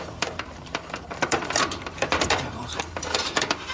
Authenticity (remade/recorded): remade